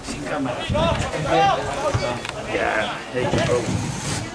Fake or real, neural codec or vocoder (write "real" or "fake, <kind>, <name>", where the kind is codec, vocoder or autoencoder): real